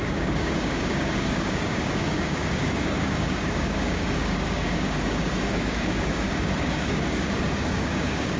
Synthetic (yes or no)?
yes